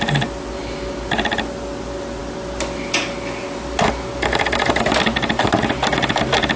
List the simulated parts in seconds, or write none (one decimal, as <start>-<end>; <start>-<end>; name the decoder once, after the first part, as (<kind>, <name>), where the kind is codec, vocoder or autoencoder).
none